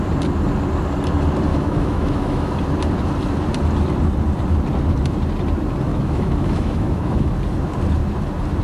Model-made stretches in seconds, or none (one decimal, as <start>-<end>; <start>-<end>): 1.5-2.5; 5.9-7.3